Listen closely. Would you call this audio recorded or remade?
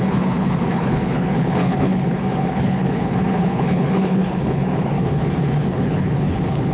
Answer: remade